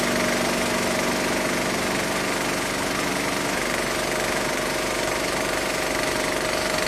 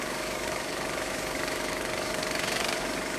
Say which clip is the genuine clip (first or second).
first